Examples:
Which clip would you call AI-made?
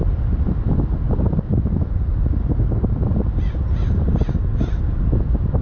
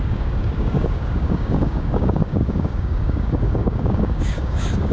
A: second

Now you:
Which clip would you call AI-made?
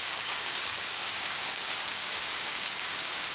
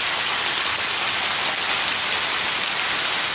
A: first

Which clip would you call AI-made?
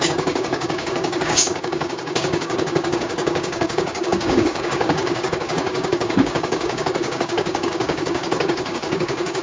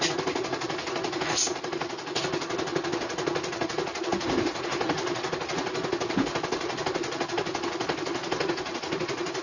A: first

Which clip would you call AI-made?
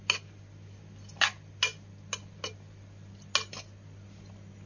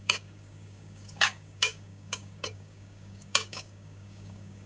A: second